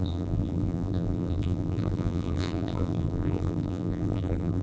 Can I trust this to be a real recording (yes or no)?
no